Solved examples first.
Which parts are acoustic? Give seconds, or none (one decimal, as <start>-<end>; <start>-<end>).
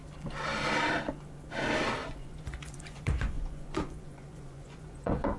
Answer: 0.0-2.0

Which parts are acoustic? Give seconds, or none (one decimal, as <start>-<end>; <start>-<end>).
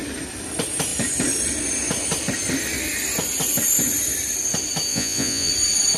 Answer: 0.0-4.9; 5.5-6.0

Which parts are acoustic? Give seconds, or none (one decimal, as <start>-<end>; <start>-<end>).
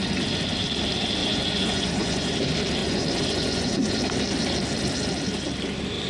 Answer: 0.0-1.2; 2.4-2.8; 4.0-6.1